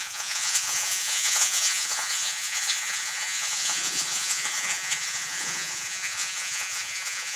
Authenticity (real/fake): fake